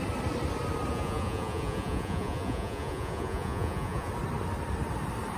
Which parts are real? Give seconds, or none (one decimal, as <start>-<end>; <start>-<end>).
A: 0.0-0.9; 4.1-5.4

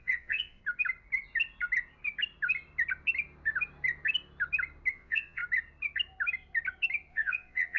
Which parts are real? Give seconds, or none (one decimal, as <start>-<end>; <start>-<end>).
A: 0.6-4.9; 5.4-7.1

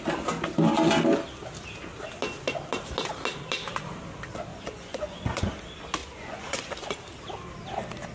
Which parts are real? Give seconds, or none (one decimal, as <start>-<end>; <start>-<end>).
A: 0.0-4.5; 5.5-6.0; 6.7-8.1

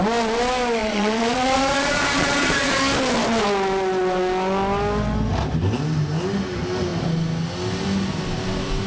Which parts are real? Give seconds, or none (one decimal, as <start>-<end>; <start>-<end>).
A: 0.0-0.8; 2.8-8.9

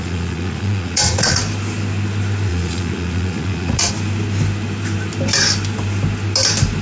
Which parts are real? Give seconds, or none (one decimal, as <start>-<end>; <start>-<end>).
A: 1.4-2.5; 3.9-6.8